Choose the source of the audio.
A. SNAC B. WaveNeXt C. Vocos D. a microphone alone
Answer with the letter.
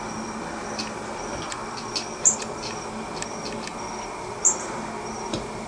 D